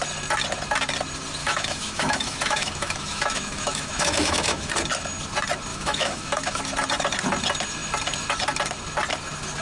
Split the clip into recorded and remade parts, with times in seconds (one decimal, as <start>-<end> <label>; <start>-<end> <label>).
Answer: 0.0-1.4 recorded; 1.4-4.7 remade; 4.7-5.7 recorded; 5.7-6.6 remade; 6.6-9.6 recorded